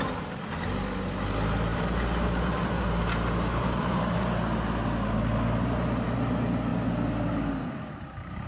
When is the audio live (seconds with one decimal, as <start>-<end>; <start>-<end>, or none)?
0.0-1.7; 3.1-3.5; 4.2-8.5